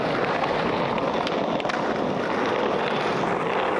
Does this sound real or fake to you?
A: real